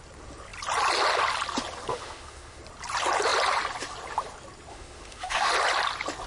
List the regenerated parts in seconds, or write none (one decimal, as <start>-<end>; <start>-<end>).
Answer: 1.9-2.6; 4.7-5.5